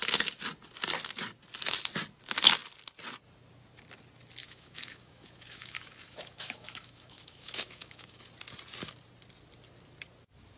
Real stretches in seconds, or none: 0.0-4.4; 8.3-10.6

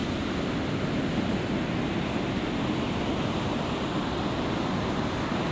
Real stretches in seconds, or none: 0.0-5.5

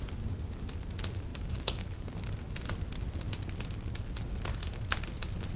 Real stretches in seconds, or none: 0.0-1.3; 2.1-4.5; 5.0-5.6

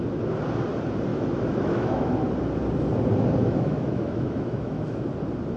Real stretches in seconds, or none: 0.0-1.1; 2.3-3.4; 5.0-5.6

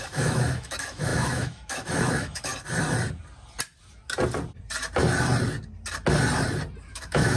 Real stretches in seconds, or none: 2.5-6.9